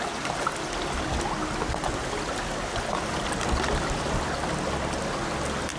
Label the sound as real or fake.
real